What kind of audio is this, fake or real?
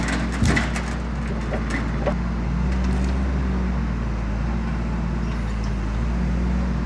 real